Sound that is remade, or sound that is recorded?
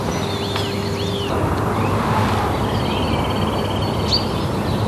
recorded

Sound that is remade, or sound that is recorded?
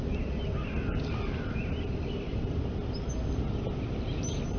recorded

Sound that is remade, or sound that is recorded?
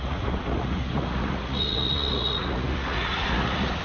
remade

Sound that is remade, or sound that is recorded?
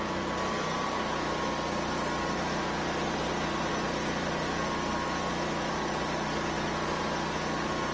recorded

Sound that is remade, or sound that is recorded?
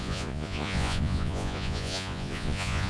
remade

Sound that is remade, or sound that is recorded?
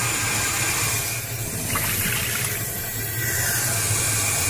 recorded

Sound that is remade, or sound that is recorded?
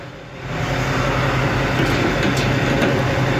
recorded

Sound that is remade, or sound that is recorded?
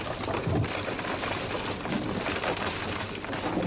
recorded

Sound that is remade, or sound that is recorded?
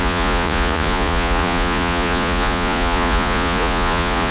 remade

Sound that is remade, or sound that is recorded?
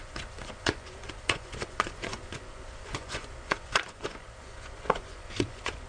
remade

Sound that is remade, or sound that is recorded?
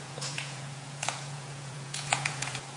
remade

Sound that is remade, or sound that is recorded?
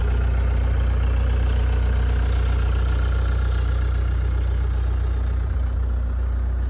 recorded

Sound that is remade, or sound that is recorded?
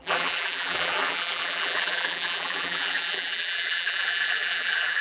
remade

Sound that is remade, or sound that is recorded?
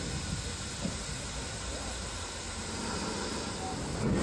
recorded